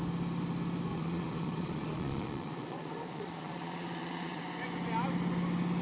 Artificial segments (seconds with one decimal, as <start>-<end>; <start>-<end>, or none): 0.9-4.4